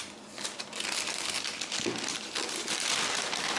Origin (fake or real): real